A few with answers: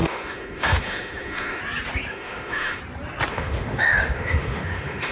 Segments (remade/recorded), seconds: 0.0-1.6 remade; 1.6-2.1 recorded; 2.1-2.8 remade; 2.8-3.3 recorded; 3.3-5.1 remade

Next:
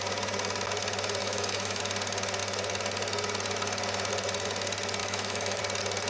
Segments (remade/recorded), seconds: 0.0-1.2 recorded; 1.2-1.8 remade; 1.8-5.0 recorded; 5.0-5.6 remade; 5.6-6.1 recorded

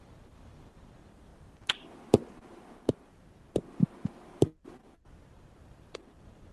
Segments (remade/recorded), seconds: 0.0-1.3 remade; 1.3-5.2 recorded; 5.2-6.5 remade

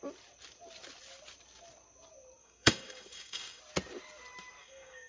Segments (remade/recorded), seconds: 0.0-2.4 recorded; 2.4-3.6 remade; 3.6-4.6 recorded; 4.6-5.1 remade